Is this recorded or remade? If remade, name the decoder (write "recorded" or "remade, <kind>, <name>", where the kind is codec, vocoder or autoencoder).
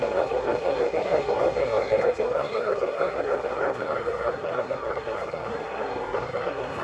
remade, codec, SNAC